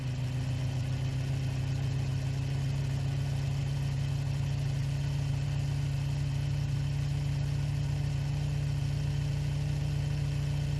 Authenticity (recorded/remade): recorded